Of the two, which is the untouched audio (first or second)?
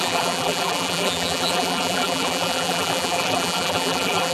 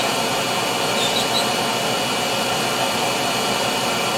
second